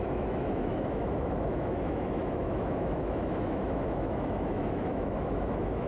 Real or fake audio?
fake